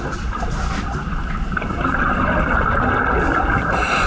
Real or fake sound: real